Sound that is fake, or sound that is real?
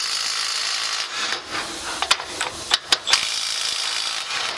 real